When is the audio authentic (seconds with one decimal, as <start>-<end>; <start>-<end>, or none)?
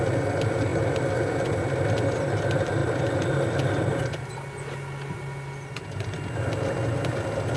0.0-7.6